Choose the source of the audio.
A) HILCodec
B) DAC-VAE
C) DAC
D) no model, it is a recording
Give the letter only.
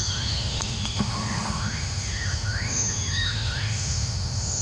B